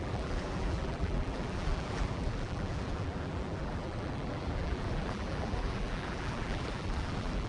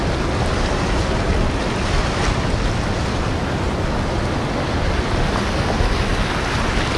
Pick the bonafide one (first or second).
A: second